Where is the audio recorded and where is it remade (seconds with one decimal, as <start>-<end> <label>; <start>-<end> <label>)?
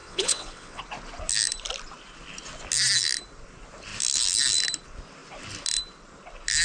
0.0-0.8 remade; 0.8-6.6 recorded